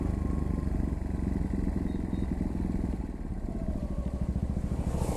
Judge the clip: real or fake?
real